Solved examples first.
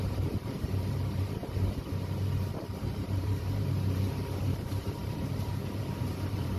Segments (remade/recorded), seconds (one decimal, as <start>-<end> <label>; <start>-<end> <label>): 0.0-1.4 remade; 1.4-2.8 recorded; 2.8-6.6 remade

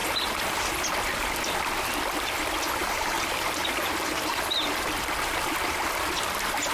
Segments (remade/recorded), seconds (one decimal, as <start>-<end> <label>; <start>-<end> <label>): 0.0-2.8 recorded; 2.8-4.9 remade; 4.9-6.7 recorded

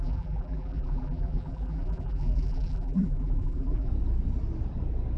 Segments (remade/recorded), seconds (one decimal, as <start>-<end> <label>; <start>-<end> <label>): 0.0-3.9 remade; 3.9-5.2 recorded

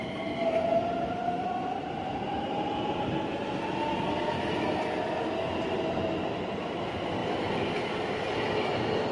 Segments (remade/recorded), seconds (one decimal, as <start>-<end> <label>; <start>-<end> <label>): 0.0-9.1 recorded

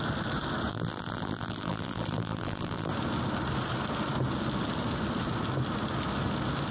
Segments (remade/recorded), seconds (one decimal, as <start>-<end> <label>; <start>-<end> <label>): 0.0-0.7 recorded; 0.7-2.9 remade; 2.9-6.7 recorded

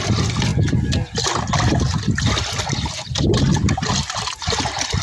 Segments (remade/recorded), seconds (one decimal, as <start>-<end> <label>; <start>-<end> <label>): 0.0-5.0 recorded

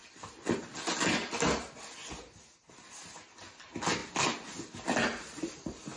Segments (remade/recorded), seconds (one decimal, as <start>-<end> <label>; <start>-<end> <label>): 0.0-6.0 recorded